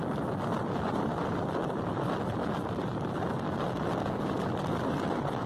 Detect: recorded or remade recorded